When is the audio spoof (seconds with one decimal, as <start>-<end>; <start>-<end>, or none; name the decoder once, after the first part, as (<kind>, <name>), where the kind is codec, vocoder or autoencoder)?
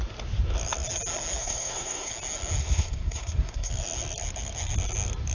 1.4-2.1 (codec, SNAC); 2.6-3.7